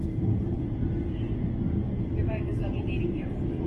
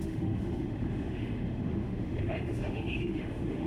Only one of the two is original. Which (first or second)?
first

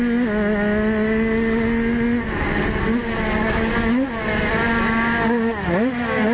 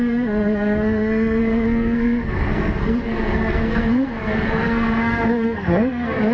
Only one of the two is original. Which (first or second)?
first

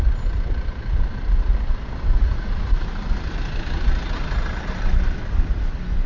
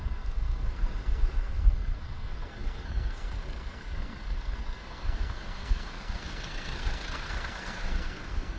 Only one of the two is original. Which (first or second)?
first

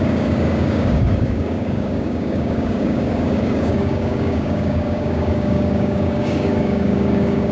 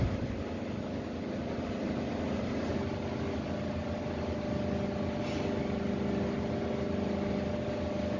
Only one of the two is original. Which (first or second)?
second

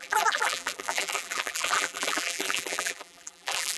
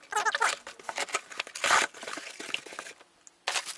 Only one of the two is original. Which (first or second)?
second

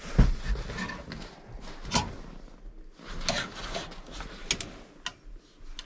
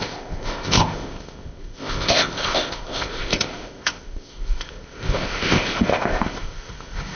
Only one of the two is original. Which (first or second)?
first